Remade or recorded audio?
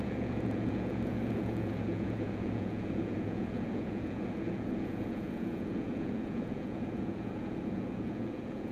remade